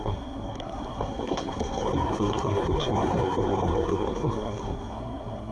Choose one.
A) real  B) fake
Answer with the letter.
B